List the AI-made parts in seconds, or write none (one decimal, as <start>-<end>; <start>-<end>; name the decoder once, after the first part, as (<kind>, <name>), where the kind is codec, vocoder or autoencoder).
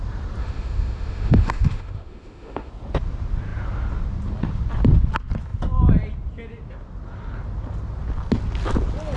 0.4-2.7 (autoencoder, DAC-VAE)